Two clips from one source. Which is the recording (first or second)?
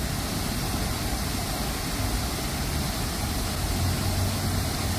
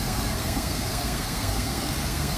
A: first